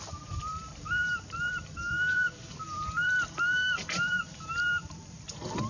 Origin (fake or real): fake